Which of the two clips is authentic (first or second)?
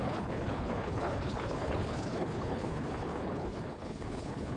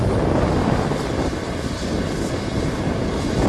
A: second